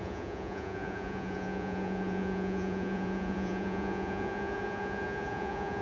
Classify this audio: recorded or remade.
remade